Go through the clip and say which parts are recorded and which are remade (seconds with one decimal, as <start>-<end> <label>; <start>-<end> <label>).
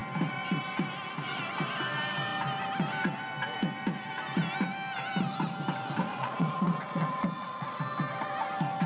0.0-6.1 recorded; 6.1-7.8 remade; 7.8-8.9 recorded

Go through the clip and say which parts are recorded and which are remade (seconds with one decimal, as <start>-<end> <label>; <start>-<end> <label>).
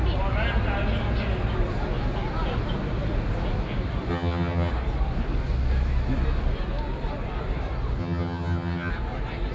0.0-4.1 recorded; 4.1-4.7 remade; 4.7-8.0 recorded; 8.0-8.9 remade; 8.9-9.5 recorded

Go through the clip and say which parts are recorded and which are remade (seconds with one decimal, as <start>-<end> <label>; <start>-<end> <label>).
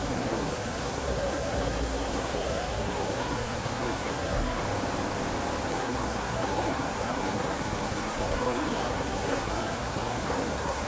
0.0-4.6 remade; 4.6-5.7 recorded; 5.7-10.9 remade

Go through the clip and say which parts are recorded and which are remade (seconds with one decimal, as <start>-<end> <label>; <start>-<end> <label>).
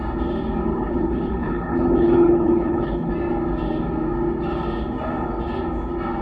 0.0-0.7 recorded; 0.7-3.1 remade; 3.1-6.2 recorded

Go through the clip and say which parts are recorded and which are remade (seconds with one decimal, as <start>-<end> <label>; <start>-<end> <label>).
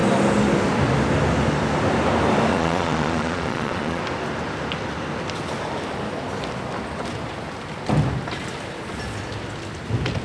0.0-2.5 recorded; 2.5-4.0 remade; 4.0-10.2 recorded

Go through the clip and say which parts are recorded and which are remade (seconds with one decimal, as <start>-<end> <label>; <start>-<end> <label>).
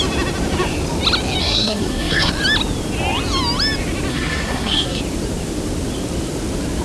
0.0-1.4 recorded; 1.4-2.3 remade; 2.3-4.1 recorded; 4.1-5.0 remade; 5.0-6.8 recorded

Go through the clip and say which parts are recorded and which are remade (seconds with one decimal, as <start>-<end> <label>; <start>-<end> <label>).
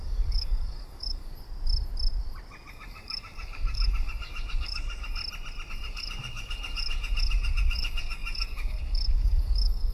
0.0-1.3 remade; 1.3-2.7 recorded; 2.7-5.2 remade; 5.2-5.7 recorded; 5.7-9.9 remade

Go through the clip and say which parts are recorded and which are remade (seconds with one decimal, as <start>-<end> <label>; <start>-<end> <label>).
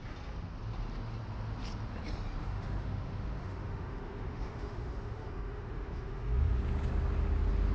0.0-2.4 recorded; 2.4-6.6 remade; 6.6-7.7 recorded